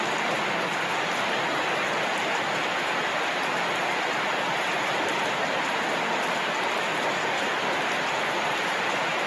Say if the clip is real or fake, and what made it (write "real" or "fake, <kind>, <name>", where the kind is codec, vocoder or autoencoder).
real